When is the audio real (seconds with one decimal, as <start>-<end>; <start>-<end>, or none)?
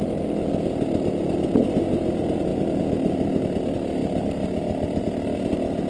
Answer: 0.0-5.9